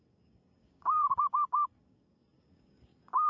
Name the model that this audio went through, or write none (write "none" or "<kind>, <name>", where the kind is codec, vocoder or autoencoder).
codec, DAC